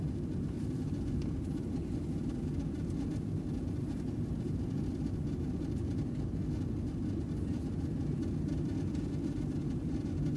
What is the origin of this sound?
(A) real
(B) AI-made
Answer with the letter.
A